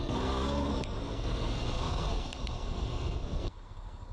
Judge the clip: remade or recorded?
remade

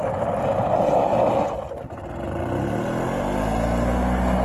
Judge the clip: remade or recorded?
recorded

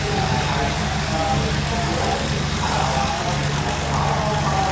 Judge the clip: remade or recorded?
remade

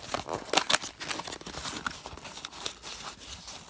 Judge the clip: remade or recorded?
recorded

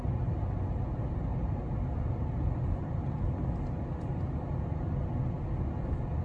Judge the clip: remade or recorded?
recorded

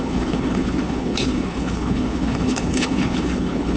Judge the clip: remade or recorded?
remade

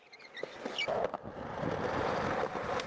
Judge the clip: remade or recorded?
recorded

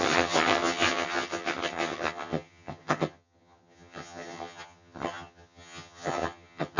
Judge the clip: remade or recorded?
remade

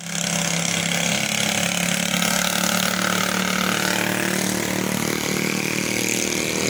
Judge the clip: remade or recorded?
recorded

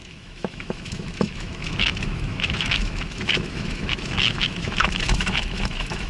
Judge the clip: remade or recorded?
remade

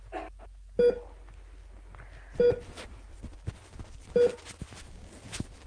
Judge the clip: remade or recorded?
recorded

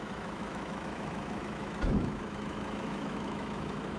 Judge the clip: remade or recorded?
remade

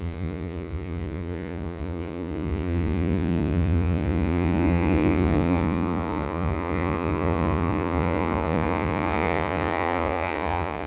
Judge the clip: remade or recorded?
remade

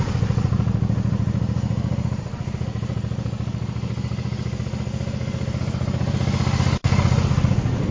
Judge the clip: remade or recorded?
recorded